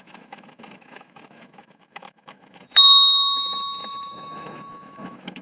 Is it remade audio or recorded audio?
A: remade